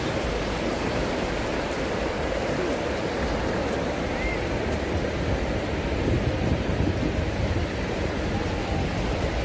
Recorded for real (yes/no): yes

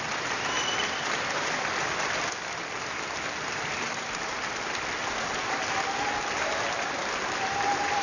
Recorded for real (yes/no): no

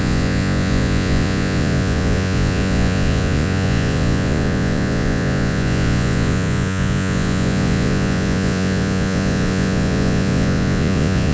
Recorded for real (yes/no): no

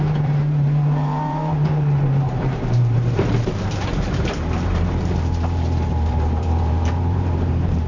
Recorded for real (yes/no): no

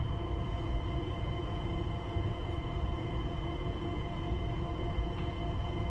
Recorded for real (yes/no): no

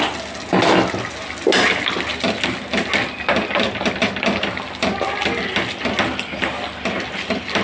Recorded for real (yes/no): yes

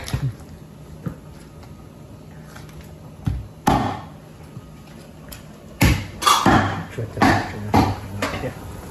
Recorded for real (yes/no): yes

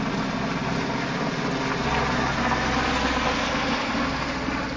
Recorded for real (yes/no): yes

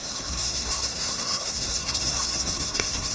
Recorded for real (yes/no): no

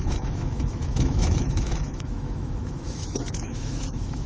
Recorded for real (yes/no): no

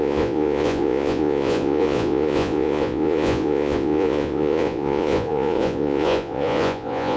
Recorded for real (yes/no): no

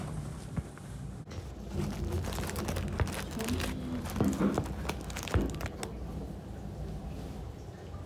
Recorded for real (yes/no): yes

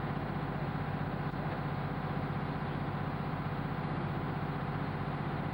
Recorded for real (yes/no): yes